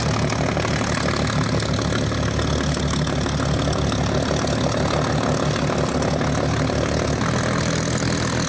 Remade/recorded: recorded